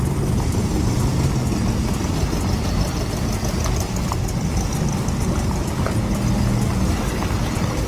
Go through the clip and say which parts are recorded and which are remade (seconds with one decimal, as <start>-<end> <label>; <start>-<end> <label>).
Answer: 0.0-7.9 recorded